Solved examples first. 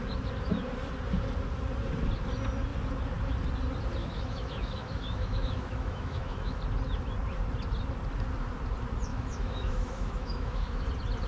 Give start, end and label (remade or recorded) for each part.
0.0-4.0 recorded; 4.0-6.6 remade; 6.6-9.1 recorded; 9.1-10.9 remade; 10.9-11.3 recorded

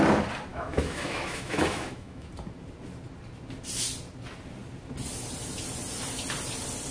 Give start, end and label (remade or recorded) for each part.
0.0-0.5 recorded; 0.5-2.3 remade; 2.3-6.9 recorded

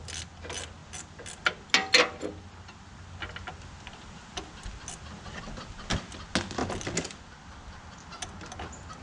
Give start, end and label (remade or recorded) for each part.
0.0-9.0 recorded

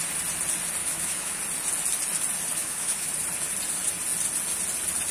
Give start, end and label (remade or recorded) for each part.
0.0-0.8 recorded; 0.8-1.4 remade; 1.4-2.6 recorded; 2.6-3.1 remade; 3.1-5.1 recorded

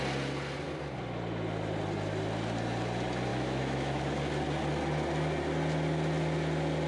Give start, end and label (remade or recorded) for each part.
0.0-3.3 recorded; 3.3-4.0 remade; 4.0-6.9 recorded

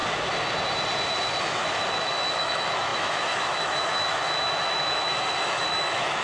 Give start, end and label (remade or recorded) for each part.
0.0-1.4 recorded; 1.4-6.2 remade

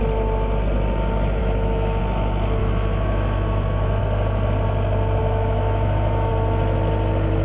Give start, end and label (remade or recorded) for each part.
0.0-1.4 recorded; 1.4-2.0 remade; 2.0-2.6 recorded; 2.6-4.0 remade; 4.0-5.2 recorded; 5.2-6.3 remade; 6.3-7.4 recorded

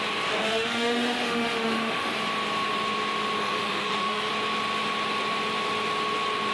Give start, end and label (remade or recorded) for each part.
0.0-0.4 recorded; 0.4-2.1 remade; 2.1-3.4 recorded; 3.4-4.3 remade; 4.3-6.5 recorded